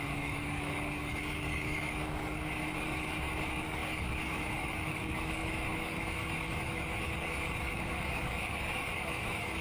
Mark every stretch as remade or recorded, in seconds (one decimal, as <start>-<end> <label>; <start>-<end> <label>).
0.0-9.6 remade